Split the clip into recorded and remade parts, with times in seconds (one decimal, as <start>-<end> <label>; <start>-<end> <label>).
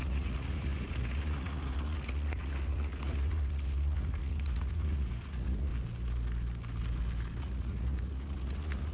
0.0-5.7 remade; 5.7-7.4 recorded; 7.4-8.9 remade